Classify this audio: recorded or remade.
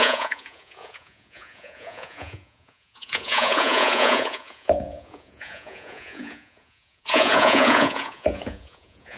remade